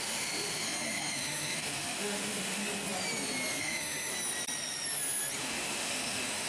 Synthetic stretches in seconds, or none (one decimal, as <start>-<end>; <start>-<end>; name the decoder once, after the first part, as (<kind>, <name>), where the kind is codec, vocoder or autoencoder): 0.0-2.6 (autoencoder, DAC-VAE); 3.6-4.1; 5.4-6.5